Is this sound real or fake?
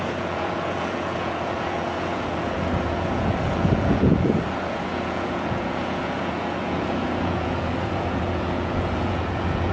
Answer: fake